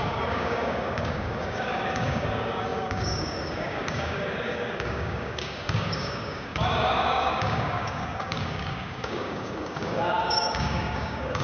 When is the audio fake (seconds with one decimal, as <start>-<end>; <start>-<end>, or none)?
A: 0.0-11.4

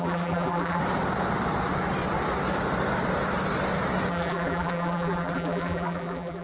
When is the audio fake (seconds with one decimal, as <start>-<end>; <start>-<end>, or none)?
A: 0.0-0.8; 4.1-6.4

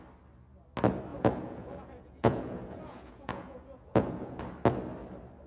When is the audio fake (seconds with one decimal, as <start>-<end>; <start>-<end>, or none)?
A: 1.1-4.4

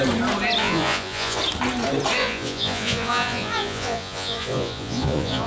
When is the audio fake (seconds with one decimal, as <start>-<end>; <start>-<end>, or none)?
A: 0.6-1.4; 2.2-5.5

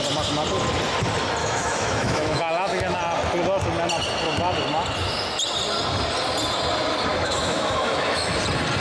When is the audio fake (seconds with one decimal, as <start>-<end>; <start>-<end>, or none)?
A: 1.4-3.0; 7.1-8.4